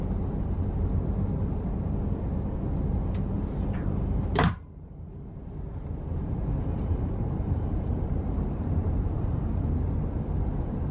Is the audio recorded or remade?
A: remade